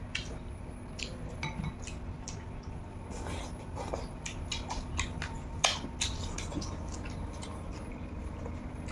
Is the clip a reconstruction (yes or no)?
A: no